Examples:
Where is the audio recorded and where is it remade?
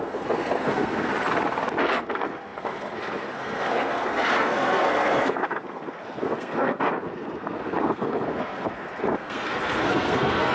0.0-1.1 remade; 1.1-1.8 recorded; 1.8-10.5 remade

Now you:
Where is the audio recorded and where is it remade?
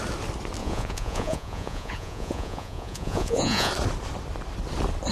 0.0-0.6 recorded; 0.6-3.7 remade; 3.7-5.1 recorded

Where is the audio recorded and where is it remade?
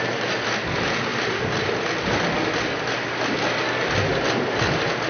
0.0-5.1 recorded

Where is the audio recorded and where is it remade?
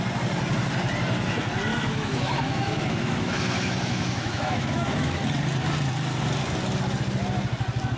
0.0-1.7 recorded; 1.7-5.2 remade; 5.2-8.0 recorded